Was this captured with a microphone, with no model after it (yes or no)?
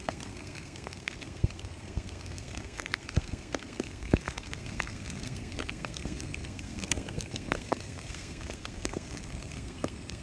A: no